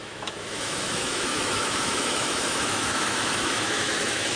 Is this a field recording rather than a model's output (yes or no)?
no